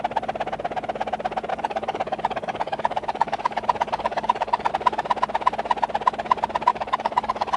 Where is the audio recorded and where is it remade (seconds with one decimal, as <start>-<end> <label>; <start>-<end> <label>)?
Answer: 0.0-1.5 recorded; 1.5-4.7 remade; 4.7-6.7 recorded; 6.7-7.6 remade